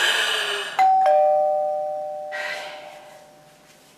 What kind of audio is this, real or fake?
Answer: real